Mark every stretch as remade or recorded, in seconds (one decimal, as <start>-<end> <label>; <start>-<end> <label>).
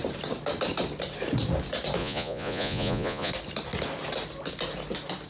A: 0.0-2.0 recorded; 2.0-3.3 remade; 3.3-5.3 recorded